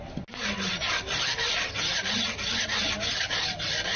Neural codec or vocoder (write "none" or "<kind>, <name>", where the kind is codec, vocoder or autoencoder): none